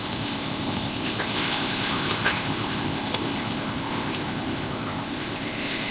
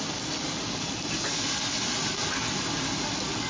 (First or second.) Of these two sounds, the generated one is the first